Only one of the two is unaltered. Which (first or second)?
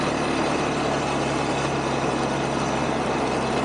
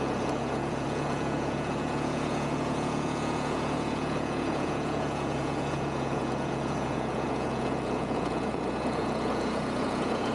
first